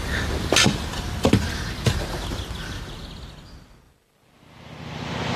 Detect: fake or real real